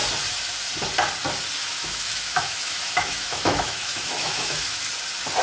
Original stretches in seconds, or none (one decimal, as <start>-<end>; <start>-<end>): 0.0-1.6; 4.8-5.4